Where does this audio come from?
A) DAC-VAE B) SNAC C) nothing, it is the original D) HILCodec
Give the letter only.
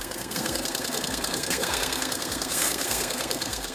B